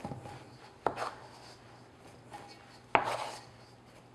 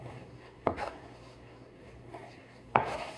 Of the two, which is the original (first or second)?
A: first